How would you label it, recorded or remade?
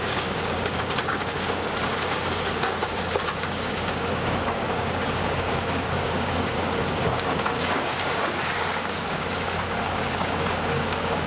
remade